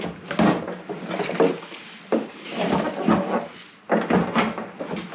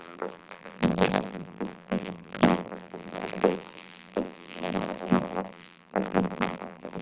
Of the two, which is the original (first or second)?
first